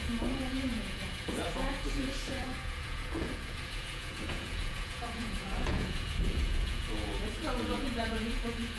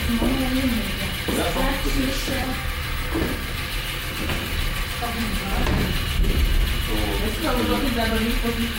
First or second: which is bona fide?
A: second